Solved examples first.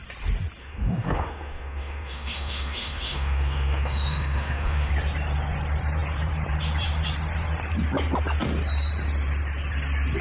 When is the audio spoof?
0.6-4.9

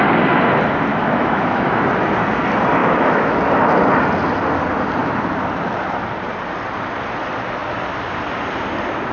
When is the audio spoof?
0.9-1.8; 2.8-3.4